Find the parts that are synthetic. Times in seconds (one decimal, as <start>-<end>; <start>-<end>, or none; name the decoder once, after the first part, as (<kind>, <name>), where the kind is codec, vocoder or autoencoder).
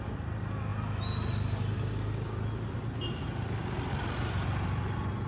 none